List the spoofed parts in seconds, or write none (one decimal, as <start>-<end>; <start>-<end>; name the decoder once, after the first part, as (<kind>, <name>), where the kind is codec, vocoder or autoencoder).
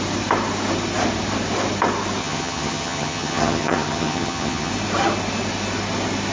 2.2-4.7 (vocoder, HiFi-GAN)